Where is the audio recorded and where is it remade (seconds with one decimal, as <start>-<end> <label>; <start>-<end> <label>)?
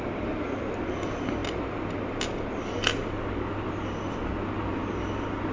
0.0-5.5 recorded